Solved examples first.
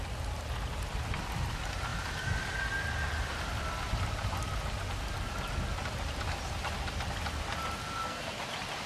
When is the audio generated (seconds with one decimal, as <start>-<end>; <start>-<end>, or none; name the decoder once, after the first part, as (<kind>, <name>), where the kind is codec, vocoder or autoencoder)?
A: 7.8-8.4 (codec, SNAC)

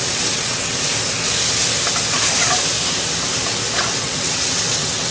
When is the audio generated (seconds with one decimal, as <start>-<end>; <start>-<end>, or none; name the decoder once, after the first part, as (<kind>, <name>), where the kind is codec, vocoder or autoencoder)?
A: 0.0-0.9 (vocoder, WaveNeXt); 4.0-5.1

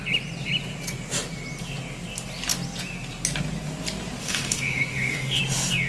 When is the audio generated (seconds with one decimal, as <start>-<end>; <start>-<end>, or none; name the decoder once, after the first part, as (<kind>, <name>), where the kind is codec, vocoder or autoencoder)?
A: 4.2-5.4 (autoencoder, DAC-VAE)

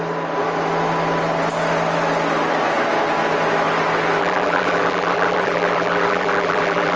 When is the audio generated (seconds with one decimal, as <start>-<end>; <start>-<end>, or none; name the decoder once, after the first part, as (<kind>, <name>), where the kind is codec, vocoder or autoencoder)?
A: 4.2-7.0 (vocoder, BigVGAN v2)

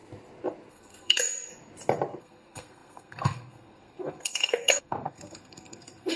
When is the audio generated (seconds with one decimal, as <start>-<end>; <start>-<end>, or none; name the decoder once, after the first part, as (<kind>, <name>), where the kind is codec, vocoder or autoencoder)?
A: 0.7-1.5 (codec, SNAC); 2.2-6.2